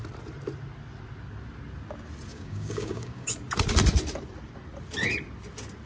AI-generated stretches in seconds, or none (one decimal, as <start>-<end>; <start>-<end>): 2.3-3.3